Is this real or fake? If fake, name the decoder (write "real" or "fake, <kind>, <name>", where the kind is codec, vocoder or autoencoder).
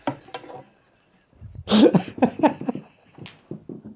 real